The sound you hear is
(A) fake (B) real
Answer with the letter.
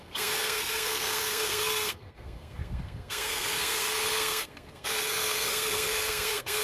A